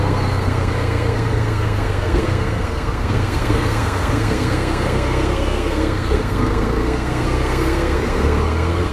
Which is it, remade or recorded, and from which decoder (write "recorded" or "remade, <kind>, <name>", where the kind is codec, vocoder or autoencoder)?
remade, codec, SNAC